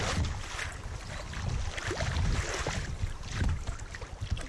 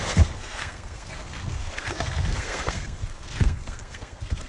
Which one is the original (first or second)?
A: first